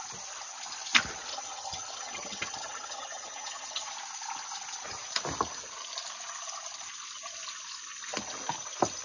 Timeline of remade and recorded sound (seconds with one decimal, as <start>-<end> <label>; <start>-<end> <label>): 0.0-1.3 recorded; 1.3-3.9 remade; 3.9-9.0 recorded